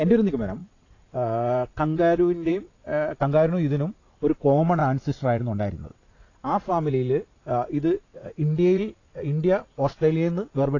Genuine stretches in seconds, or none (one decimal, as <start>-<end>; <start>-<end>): 0.0-0.6; 2.5-4.8; 5.7-8.1; 9.0-10.8